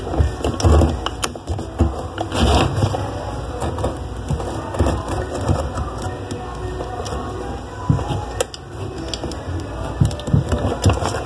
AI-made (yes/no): no